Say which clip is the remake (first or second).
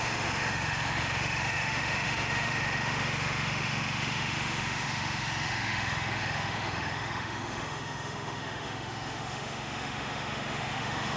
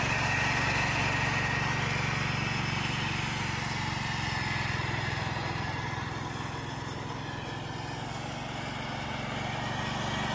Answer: first